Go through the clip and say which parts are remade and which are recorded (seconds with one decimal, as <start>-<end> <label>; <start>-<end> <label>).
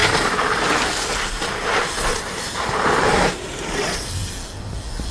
0.0-2.1 recorded; 2.1-4.2 remade; 4.2-5.1 recorded